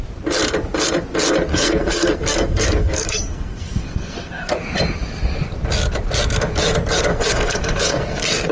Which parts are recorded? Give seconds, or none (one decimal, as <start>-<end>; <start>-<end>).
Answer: 0.0-1.5; 4.5-7.1